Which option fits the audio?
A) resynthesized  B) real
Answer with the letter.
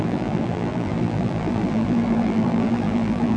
A